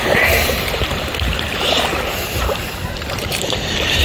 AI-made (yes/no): yes